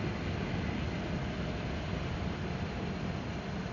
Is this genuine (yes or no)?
yes